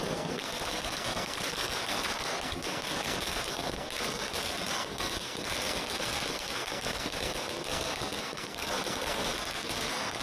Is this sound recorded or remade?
remade